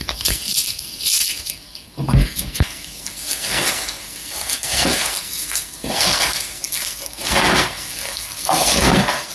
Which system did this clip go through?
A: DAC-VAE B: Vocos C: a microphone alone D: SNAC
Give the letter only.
D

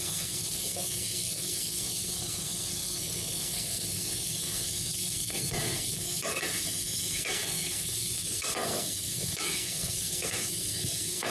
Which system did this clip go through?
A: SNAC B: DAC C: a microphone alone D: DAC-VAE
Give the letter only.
A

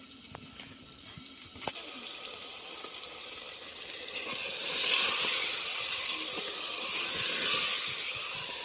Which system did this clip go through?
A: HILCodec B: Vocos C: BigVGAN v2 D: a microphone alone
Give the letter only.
D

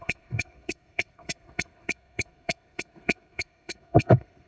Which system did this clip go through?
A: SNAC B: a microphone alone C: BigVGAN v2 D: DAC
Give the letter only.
A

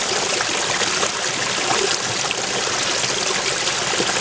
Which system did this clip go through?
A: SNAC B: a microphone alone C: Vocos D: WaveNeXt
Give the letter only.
B